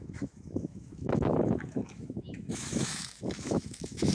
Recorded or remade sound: remade